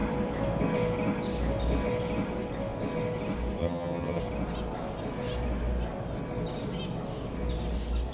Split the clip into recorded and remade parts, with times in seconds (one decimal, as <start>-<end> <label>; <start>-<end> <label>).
0.0-3.6 recorded; 3.6-4.2 remade; 4.2-8.1 recorded